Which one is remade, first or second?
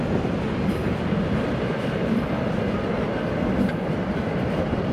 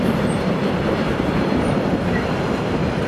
second